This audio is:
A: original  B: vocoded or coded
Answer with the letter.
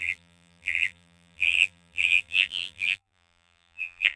B